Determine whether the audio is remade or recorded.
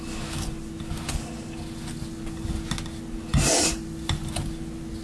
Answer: recorded